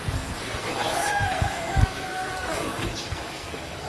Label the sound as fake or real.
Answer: fake